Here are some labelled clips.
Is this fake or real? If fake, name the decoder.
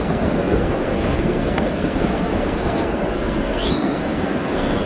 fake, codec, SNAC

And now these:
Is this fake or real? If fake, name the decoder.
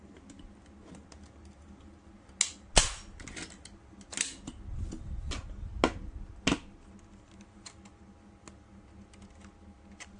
real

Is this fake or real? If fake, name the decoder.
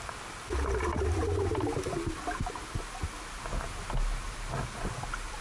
real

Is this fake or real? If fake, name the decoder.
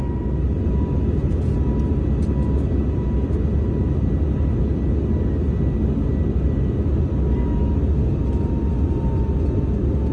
real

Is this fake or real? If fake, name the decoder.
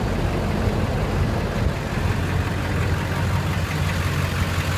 real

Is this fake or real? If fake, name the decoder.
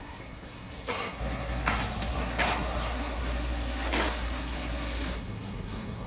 fake, codec, SNAC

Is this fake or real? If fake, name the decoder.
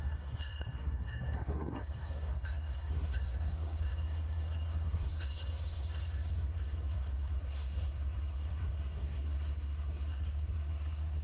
fake, codec, SNAC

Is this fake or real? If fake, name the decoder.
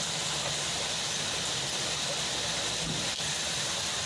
real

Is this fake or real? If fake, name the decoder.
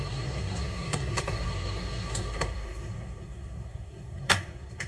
fake, codec, SNAC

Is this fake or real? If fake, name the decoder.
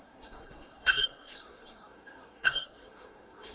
fake, codec, SNAC